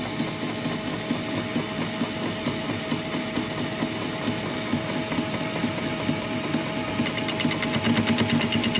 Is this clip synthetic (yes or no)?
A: no